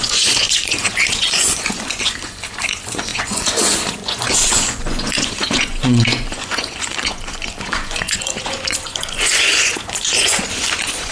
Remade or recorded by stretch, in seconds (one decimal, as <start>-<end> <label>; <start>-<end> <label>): 0.0-11.1 remade

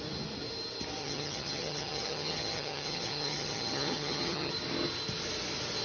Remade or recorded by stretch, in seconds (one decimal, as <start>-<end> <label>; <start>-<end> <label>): 0.0-1.0 recorded; 1.0-4.5 remade; 4.5-5.8 recorded

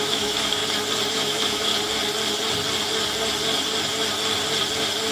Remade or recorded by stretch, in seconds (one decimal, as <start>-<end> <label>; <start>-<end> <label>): 0.0-0.6 remade; 0.6-1.1 recorded; 1.1-1.7 remade; 1.7-5.1 recorded

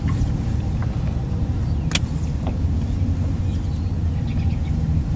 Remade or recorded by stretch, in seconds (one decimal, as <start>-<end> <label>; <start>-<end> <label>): 0.0-5.2 recorded

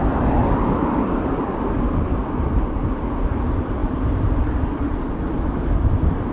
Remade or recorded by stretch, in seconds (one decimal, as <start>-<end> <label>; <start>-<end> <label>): 0.0-2.2 remade; 2.2-3.3 recorded; 3.3-6.3 remade

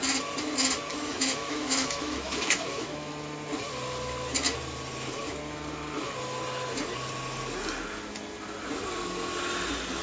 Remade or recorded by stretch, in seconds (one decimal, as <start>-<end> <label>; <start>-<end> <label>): 0.0-0.9 recorded; 0.9-3.1 remade; 3.1-10.0 recorded